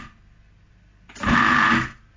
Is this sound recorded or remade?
recorded